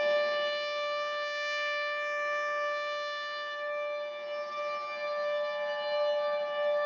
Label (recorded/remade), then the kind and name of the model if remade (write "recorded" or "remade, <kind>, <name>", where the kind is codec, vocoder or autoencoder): recorded